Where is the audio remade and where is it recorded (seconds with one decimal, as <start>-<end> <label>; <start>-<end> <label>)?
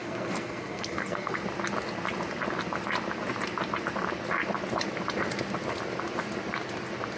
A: 0.0-1.4 remade; 1.4-7.2 recorded